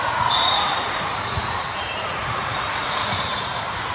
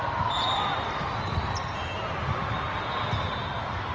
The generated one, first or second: first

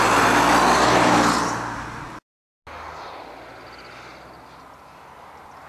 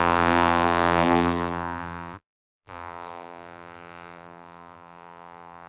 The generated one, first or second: second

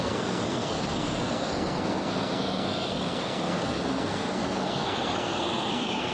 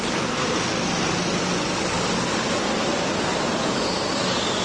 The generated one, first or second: first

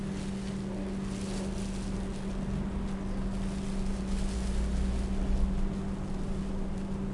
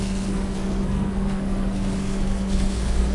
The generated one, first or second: second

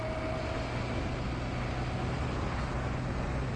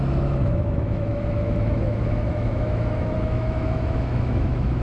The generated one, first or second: second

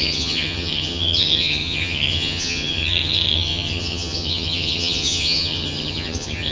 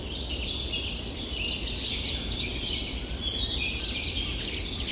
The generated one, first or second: first